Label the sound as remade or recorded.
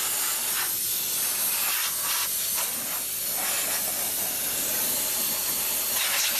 recorded